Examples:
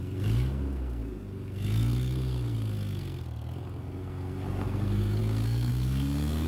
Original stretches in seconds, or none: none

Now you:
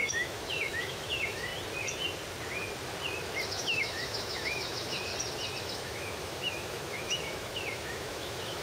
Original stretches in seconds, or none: 1.5-3.5; 5.1-5.6

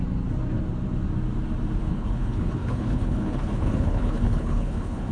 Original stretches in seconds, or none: 0.0-1.9

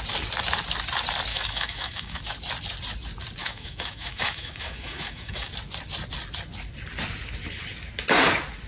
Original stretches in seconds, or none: 0.0-1.3; 2.2-3.4; 5.5-8.7